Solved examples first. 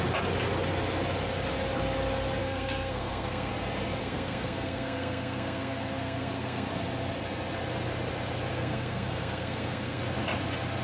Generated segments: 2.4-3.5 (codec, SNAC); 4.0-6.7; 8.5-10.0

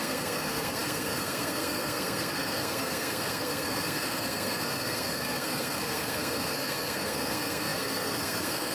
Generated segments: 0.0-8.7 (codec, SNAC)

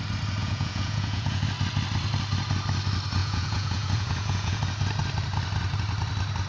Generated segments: 0.4-1.4 (vocoder, Vocos); 3.2-4.6

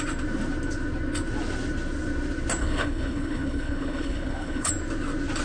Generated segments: 2.6-4.7 (codec, HILCodec)

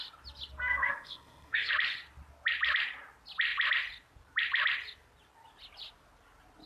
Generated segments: 0.7-1.7 (codec, SNAC)

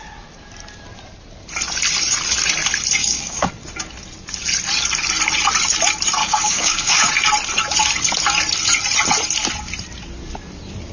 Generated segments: 3.0-3.5 (codec, DAC); 6.2-7.1